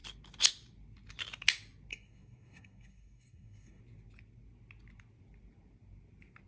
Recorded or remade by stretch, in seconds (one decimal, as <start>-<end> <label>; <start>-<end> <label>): 0.0-1.9 recorded; 1.9-3.8 remade; 3.8-6.5 recorded